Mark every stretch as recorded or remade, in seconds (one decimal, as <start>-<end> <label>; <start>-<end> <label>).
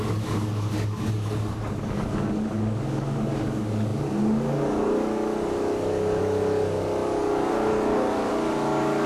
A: 0.0-9.1 remade